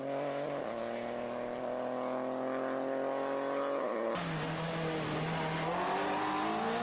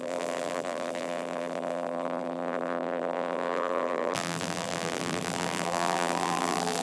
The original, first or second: first